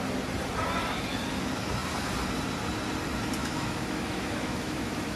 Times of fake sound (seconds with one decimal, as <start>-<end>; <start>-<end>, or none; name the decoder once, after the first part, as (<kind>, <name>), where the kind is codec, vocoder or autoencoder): 3.4-5.2 (autoencoder, DAC-VAE)